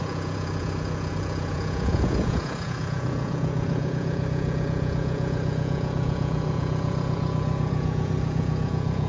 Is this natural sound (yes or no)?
no